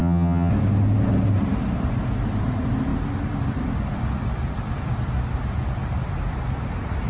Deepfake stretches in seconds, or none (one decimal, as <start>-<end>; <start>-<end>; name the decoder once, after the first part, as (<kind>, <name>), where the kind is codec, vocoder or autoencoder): 0.0-0.5 (vocoder, HiFi-GAN)